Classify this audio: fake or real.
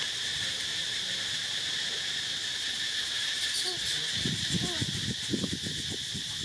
real